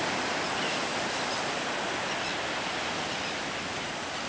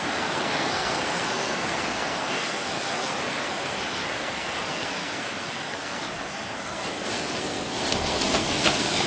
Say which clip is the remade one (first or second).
second